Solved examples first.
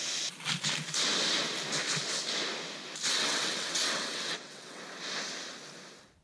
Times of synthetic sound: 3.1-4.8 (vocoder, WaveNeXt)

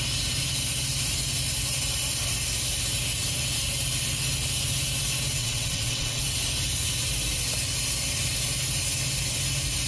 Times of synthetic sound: 5.4-6.2 (vocoder, WaveNeXt)

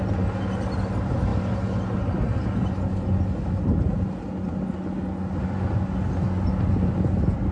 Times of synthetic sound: none

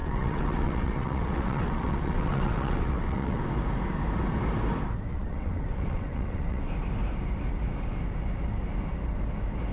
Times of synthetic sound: 0.0-3.4 (vocoder, WaveNeXt); 5.1-6.6